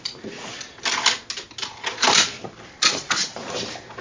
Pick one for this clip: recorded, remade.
recorded